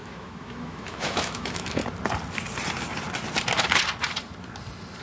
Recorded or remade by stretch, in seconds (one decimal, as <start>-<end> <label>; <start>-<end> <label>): 0.0-1.8 remade; 1.8-5.0 recorded